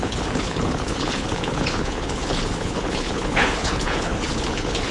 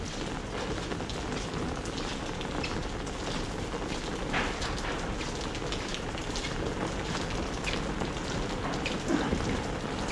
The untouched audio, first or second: second